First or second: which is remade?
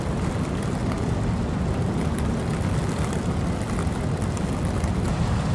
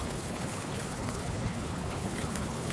second